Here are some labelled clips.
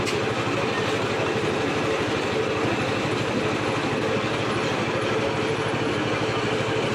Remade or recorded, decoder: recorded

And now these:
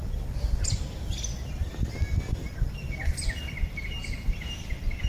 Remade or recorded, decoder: recorded